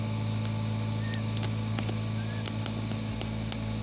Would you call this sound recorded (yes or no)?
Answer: yes